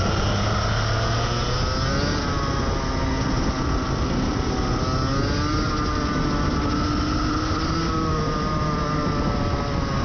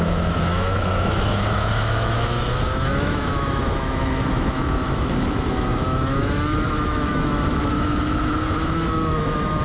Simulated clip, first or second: second